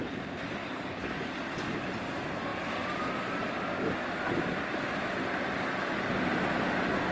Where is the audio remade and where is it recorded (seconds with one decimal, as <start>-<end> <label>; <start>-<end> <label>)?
0.0-0.6 recorded; 0.6-1.3 remade; 1.3-7.1 recorded